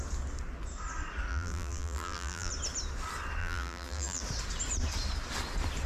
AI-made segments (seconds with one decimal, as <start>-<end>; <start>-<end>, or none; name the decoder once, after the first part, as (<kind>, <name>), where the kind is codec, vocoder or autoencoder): 1.3-2.5 (vocoder, BigVGAN v2); 3.4-4.2